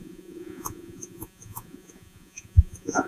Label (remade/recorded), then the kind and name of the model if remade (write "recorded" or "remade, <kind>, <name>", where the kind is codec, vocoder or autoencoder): remade, vocoder, Vocos